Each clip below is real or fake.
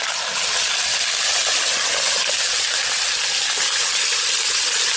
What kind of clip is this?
real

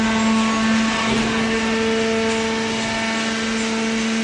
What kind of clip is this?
real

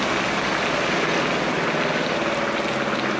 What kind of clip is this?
real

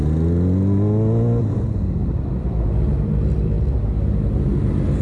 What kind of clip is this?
real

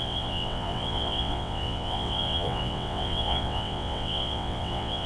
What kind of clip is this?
fake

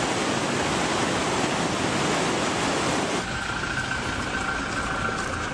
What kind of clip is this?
real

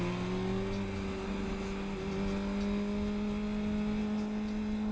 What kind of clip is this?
real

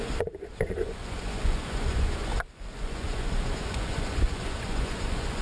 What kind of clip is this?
fake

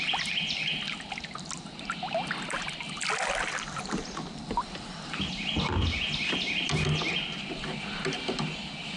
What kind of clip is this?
real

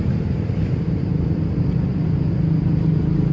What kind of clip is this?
real